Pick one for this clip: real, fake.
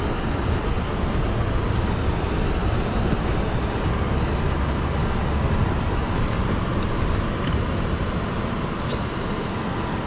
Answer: real